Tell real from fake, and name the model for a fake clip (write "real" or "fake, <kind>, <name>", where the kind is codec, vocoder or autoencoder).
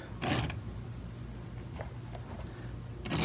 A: real